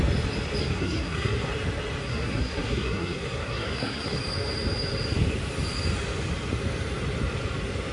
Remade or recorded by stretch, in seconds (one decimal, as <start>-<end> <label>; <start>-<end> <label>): 0.0-0.6 recorded; 0.6-1.5 remade; 1.5-2.0 recorded; 2.0-4.2 remade; 4.2-7.9 recorded